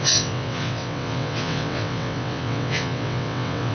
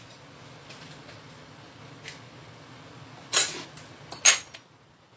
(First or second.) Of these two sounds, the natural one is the second